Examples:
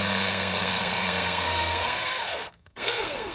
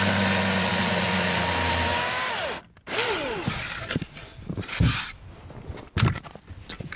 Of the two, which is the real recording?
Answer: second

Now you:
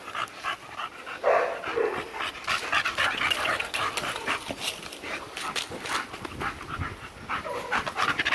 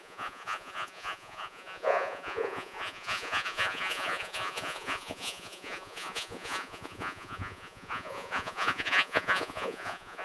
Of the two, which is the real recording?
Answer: first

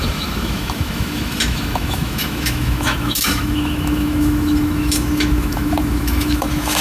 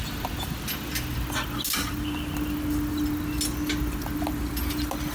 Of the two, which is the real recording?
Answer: second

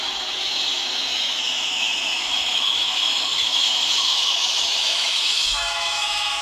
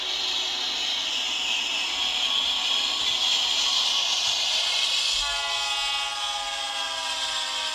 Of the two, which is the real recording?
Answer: second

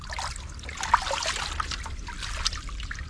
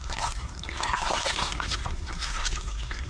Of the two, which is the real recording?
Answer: first